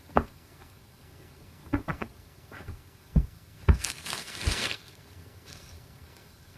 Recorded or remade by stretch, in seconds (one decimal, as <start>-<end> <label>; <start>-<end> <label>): 0.0-6.6 remade